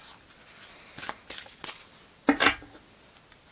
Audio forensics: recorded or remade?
recorded